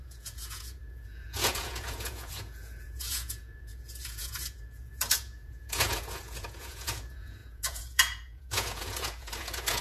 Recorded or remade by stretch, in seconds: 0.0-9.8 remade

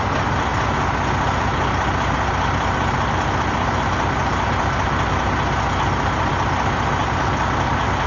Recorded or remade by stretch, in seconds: 0.0-8.1 recorded

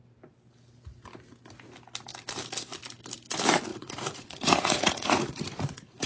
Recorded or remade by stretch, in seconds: 0.0-3.7 recorded; 3.7-6.1 remade

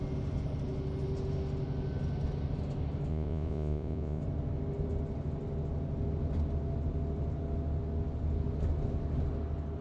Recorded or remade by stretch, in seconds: 0.0-3.1 recorded; 3.1-4.2 remade; 4.2-9.8 recorded

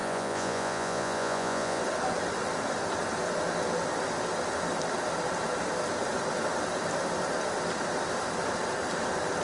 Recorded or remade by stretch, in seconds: 0.0-1.8 remade; 1.8-9.4 recorded

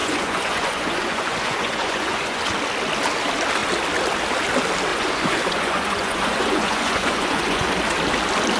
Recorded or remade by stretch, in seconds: 0.0-2.4 remade; 2.4-4.9 recorded; 4.9-7.7 remade; 7.7-8.6 recorded

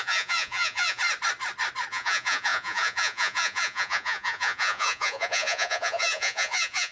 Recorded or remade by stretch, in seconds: 0.0-1.0 remade; 1.0-1.9 recorded; 1.9-6.9 remade